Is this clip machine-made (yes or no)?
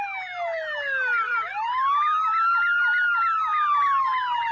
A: no